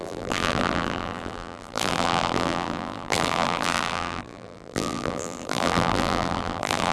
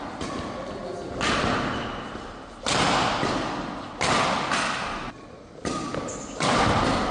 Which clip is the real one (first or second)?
second